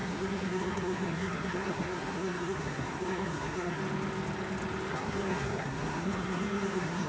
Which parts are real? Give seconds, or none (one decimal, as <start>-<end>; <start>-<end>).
3.8-4.9

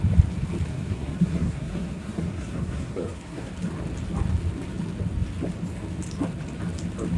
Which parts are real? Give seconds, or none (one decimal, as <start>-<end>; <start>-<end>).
0.0-0.7; 3.5-7.2